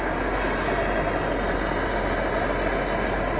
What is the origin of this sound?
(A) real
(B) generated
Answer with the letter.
A